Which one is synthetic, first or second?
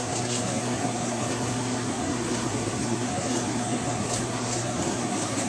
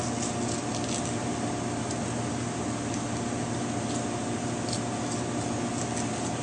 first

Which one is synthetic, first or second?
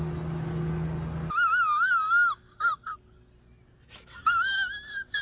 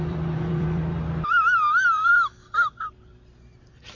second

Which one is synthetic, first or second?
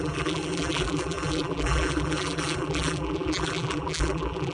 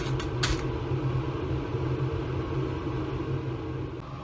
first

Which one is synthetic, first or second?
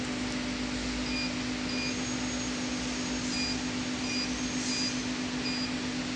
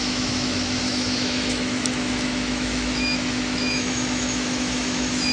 second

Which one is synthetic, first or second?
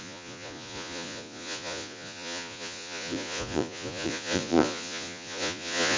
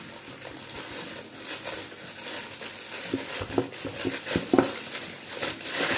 first